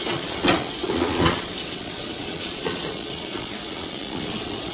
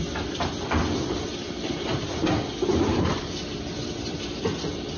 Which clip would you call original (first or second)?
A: second